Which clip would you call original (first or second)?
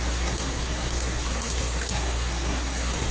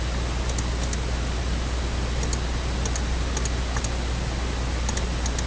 second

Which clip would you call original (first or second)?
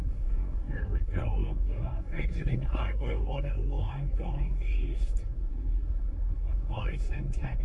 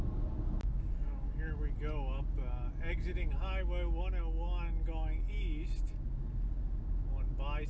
second